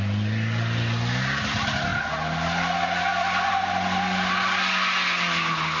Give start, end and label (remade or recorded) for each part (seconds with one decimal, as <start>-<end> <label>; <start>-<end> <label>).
0.0-5.8 recorded